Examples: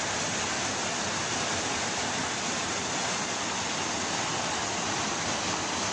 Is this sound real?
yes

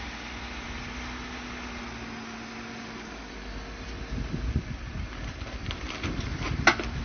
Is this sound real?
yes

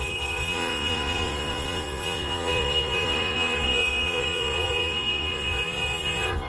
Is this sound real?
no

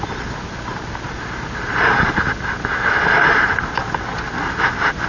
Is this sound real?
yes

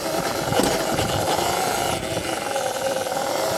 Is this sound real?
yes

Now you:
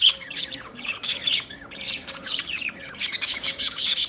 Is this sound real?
no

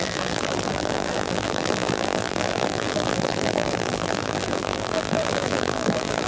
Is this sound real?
no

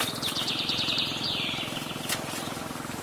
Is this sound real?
no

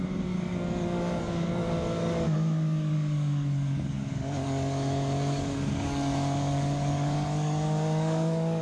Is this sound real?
no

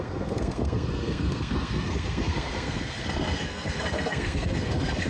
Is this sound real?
no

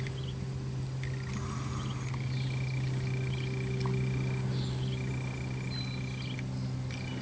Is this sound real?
yes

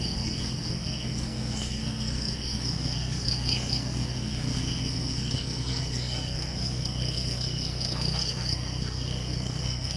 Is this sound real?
no